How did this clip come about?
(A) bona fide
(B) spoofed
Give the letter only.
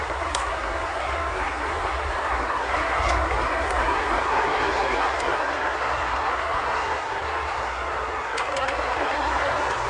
B